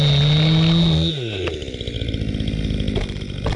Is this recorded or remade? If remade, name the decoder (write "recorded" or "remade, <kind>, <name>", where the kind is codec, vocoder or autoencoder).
recorded